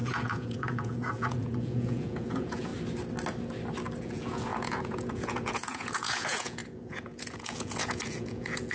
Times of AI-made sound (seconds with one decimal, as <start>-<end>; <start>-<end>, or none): 0.0-2.7; 4.0-8.7